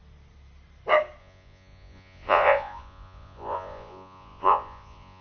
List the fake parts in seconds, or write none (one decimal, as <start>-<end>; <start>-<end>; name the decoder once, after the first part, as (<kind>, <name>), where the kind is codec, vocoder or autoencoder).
1.2-5.2 (vocoder, Vocos)